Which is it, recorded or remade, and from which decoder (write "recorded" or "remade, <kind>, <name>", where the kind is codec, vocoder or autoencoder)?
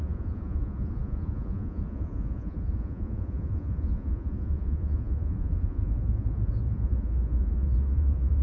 remade, vocoder, Vocos